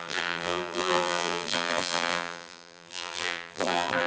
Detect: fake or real fake